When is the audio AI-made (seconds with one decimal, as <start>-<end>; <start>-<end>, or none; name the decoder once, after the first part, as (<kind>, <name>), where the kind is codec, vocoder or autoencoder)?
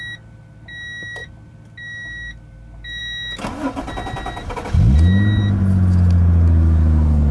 none